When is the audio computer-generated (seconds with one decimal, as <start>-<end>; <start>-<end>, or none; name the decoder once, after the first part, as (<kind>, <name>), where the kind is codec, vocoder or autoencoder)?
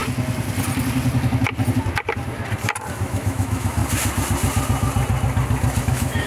2.9-3.8 (autoencoder, DAC-VAE); 5.8-6.3